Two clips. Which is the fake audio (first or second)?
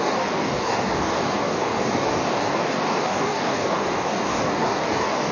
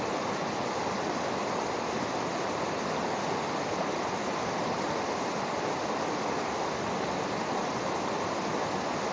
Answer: first